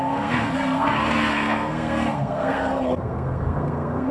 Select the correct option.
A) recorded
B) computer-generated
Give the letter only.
B